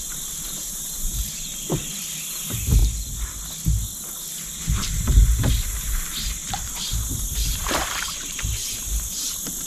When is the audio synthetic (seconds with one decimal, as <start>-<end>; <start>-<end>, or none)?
0.0-1.2; 2.3-2.8; 4.6-9.7